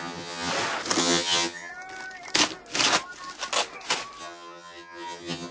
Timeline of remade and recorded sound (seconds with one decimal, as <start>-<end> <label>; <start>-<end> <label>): 0.0-0.5 remade; 0.5-1.0 recorded; 1.0-1.7 remade; 1.7-4.2 recorded; 4.2-5.5 remade